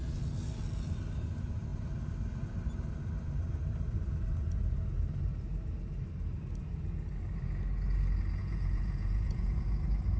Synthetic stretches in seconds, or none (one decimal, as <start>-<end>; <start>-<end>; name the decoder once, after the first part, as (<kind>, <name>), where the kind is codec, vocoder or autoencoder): 8.4-9.6 (vocoder, Vocos)